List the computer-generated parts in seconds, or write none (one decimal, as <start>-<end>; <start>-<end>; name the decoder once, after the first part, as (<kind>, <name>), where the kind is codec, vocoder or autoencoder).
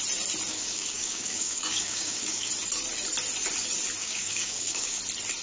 0.5-2.5 (codec, DAC); 4.0-5.0